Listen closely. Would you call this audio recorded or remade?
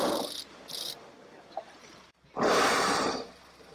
recorded